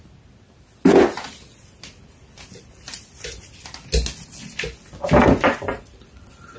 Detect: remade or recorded recorded